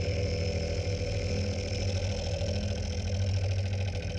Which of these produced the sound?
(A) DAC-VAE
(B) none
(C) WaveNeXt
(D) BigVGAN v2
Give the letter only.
B